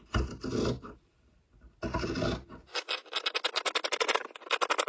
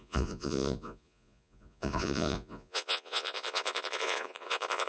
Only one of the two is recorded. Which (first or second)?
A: first